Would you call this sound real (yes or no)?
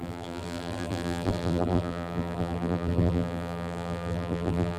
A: no